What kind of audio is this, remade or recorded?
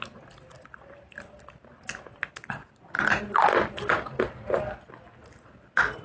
recorded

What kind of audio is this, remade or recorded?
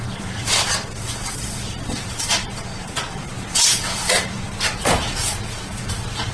remade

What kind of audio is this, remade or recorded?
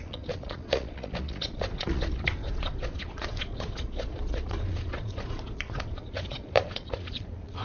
remade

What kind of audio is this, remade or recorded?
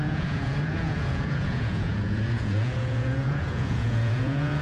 remade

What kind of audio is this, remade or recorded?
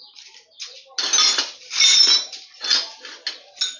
recorded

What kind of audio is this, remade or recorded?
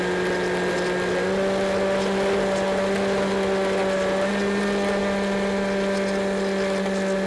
recorded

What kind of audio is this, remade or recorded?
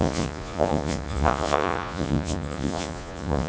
remade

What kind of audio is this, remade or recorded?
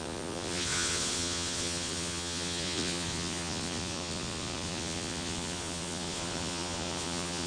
remade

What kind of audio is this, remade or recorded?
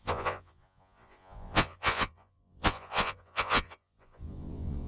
remade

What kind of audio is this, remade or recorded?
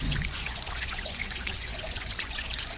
remade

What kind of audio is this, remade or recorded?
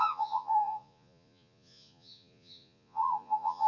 remade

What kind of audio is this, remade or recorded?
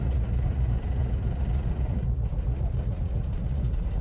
remade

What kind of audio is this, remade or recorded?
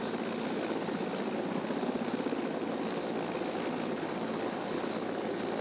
recorded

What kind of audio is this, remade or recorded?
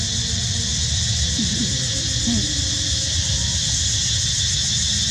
recorded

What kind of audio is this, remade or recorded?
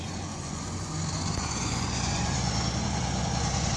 remade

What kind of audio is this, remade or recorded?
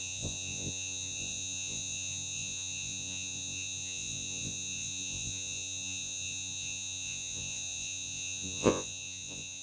remade